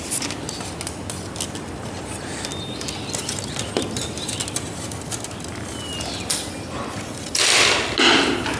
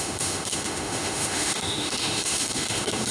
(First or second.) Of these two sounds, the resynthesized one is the second